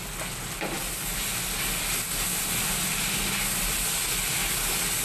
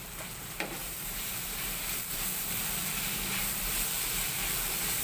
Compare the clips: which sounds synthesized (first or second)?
second